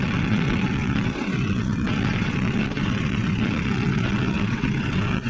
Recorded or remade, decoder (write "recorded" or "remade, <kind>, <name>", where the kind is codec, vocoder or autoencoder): remade, vocoder, WaveNeXt